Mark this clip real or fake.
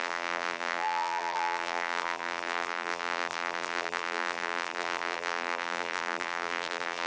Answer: fake